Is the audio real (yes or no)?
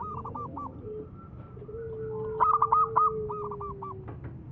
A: yes